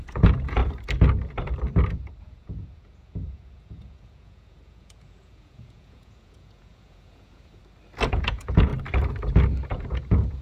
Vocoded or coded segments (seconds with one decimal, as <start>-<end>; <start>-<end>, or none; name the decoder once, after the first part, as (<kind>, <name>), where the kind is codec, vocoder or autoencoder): 0.0-0.6 (vocoder, Vocos); 2.2-7.6; 8.1-8.7; 9.7-10.4